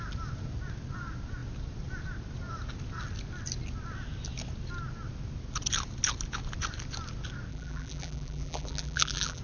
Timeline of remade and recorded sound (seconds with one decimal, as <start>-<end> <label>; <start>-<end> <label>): 0.0-7.5 recorded; 7.5-9.4 remade